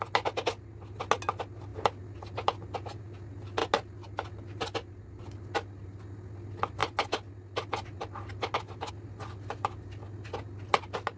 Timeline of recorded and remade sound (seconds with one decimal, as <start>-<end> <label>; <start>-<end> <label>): 0.0-11.2 recorded